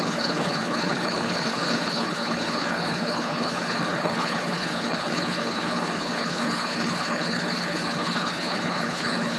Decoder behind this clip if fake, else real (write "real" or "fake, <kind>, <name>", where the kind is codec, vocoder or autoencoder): fake, codec, HILCodec